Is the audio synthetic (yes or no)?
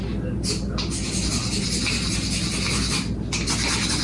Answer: no